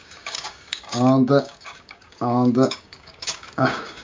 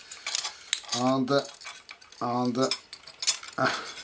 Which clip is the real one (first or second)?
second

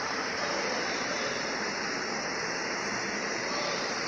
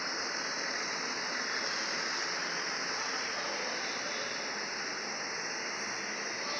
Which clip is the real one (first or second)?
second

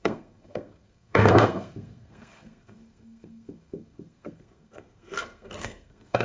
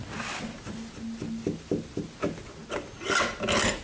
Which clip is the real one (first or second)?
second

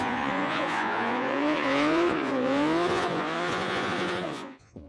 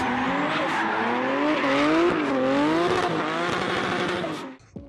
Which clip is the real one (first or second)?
second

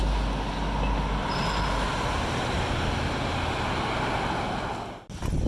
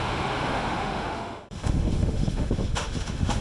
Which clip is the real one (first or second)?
first